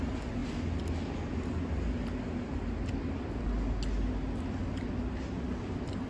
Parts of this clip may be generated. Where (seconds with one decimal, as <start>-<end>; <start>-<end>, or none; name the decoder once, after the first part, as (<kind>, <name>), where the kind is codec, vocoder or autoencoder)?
none